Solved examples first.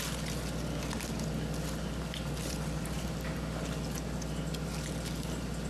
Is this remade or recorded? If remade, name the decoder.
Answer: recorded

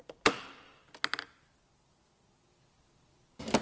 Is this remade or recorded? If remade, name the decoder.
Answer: recorded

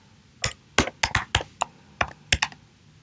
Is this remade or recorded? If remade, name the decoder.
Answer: recorded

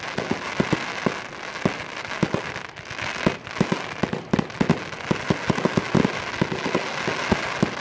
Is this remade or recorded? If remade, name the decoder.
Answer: recorded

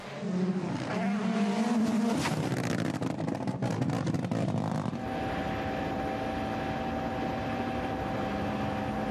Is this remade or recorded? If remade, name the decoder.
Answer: recorded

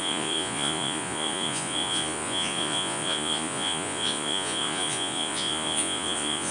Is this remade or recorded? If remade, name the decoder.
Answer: remade, vocoder, Vocos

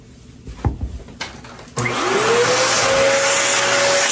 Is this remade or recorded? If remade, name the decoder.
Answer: recorded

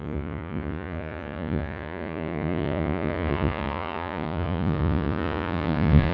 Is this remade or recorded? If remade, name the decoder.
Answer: remade, vocoder, Vocos